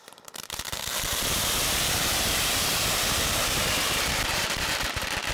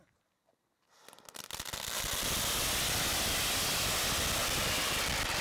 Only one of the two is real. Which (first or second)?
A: second